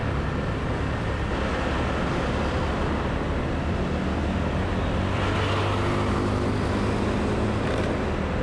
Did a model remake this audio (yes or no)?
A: no